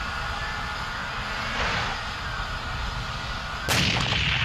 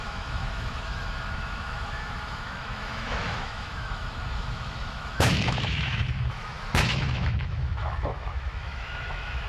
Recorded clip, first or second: first